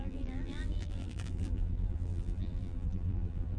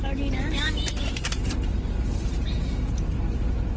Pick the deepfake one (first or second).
first